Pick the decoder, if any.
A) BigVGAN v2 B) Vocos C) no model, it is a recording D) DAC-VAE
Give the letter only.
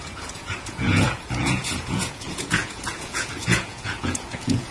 B